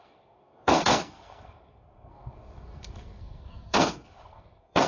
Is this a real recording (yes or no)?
no